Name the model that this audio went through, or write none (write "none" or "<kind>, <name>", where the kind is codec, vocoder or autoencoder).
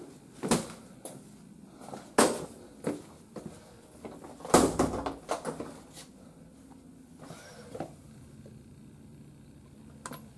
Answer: none